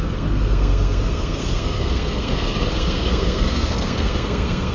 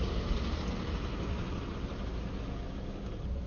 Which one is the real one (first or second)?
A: second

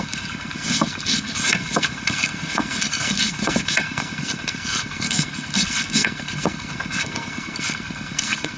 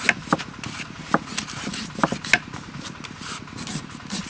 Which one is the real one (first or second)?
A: second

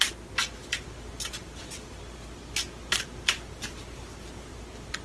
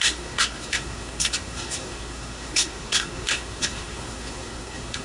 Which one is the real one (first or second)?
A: first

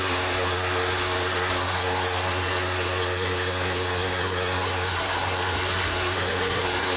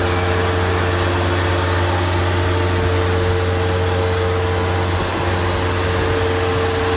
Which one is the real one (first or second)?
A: second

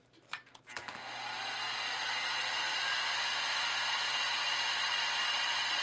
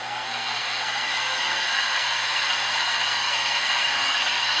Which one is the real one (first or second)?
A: first